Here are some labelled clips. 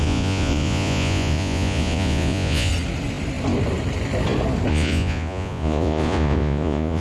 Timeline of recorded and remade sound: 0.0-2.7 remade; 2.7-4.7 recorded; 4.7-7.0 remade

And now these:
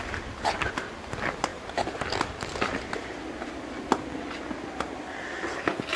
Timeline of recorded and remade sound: 0.0-6.0 recorded

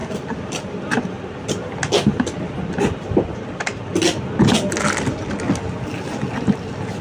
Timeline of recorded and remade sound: 0.0-7.0 recorded

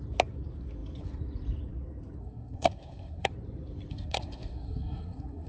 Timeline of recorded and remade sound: 0.0-2.2 recorded; 2.2-3.3 remade; 3.3-3.9 recorded; 3.9-5.5 remade

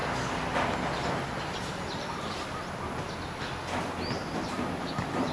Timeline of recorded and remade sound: 0.0-5.3 recorded